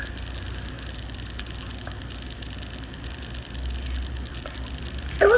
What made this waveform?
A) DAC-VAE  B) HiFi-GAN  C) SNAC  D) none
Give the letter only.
D